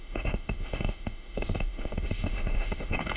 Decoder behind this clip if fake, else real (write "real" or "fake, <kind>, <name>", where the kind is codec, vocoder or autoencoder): fake, autoencoder, DAC-VAE